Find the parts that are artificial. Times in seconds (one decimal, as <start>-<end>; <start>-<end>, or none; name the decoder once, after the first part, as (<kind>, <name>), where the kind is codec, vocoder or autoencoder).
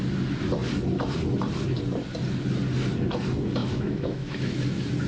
3.6-4.6 (autoencoder, DAC-VAE)